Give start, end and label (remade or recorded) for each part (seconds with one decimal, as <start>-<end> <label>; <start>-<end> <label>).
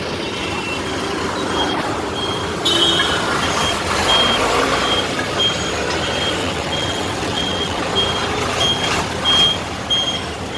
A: 0.0-6.4 recorded; 6.4-7.8 remade; 7.8-10.6 recorded